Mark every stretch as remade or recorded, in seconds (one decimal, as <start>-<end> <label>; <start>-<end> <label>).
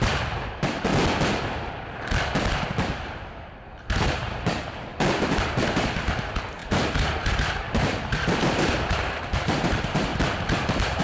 0.0-0.9 remade; 0.9-3.0 recorded; 3.0-4.9 remade; 4.9-5.5 recorded; 5.5-10.1 remade; 10.1-11.0 recorded